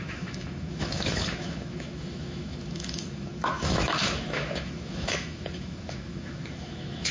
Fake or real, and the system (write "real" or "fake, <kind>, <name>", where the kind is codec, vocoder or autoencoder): fake, autoencoder, DAC-VAE